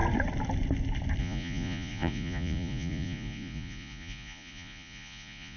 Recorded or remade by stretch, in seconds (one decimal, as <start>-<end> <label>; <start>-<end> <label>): 0.0-1.2 recorded; 1.2-5.6 remade